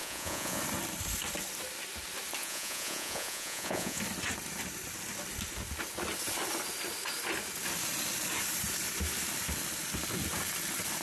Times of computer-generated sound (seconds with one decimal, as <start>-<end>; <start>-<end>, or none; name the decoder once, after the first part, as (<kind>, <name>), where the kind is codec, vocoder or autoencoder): 0.0-0.6 (vocoder, Vocos); 2.4-4.0